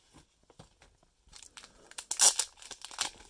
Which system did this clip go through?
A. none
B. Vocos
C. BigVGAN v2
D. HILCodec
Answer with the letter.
A